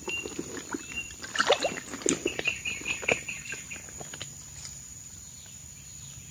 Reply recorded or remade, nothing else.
recorded